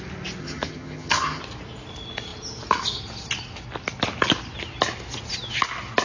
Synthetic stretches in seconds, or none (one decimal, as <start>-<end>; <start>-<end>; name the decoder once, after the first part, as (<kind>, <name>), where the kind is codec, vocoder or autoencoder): 0.4-1.4 (vocoder, HiFi-GAN)